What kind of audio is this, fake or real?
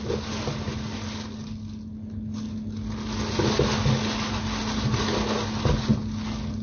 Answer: real